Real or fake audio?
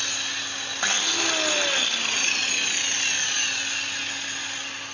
real